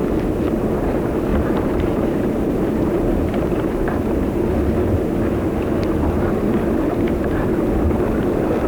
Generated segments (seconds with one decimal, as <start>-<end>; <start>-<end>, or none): 1.3-4.4